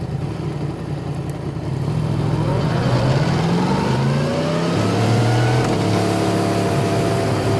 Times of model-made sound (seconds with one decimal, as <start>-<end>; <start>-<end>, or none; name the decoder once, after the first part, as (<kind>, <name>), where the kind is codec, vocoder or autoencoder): 2.5-3.0 (vocoder, Vocos)